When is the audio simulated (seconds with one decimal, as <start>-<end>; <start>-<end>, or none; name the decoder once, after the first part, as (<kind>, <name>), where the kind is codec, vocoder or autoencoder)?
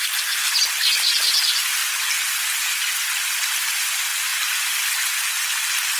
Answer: none